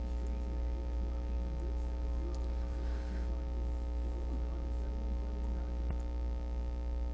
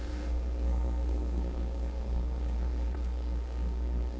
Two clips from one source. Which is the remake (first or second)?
second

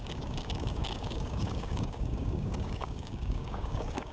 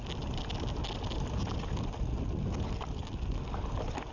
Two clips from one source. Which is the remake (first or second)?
first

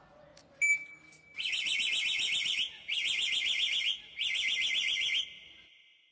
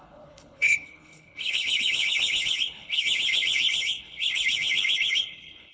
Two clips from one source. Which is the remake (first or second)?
second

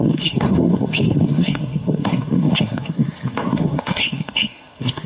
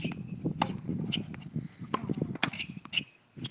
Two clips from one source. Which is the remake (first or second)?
first